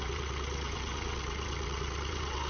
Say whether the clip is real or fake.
fake